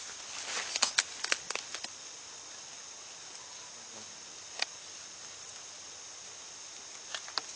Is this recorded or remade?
recorded